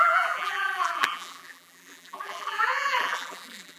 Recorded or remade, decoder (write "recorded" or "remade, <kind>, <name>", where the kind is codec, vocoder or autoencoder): remade, vocoder, BigVGAN v2